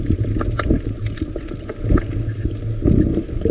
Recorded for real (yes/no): yes